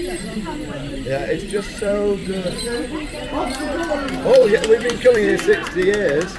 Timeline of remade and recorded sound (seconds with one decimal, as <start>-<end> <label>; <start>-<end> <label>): 0.0-5.6 remade; 5.6-6.4 recorded